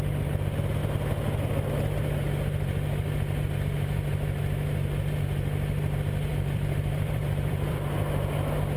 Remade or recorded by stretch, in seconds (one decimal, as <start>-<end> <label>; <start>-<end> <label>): 0.0-6.3 recorded; 6.3-8.0 remade; 8.0-8.8 recorded